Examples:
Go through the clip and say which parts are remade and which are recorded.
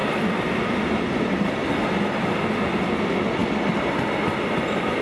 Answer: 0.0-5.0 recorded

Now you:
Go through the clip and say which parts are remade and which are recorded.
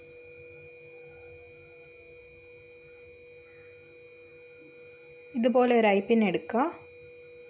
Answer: 0.0-7.5 recorded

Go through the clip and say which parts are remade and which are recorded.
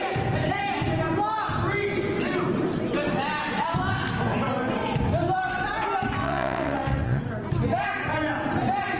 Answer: 0.0-6.2 recorded; 6.2-7.2 remade; 7.2-9.0 recorded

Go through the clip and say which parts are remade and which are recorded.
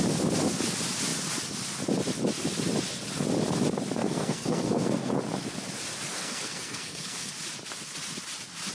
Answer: 0.0-4.0 recorded; 4.0-5.1 remade; 5.1-6.1 recorded; 6.1-7.3 remade; 7.3-8.7 recorded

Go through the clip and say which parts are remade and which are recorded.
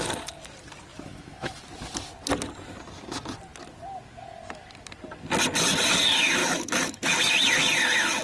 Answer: 0.0-0.9 recorded; 0.9-1.6 remade; 1.6-6.4 recorded; 6.4-7.1 remade; 7.1-8.2 recorded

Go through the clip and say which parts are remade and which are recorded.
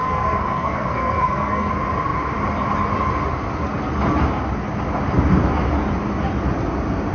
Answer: 0.0-1.7 remade; 1.7-7.1 recorded